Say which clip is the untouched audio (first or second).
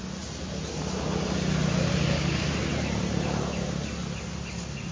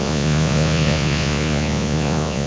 first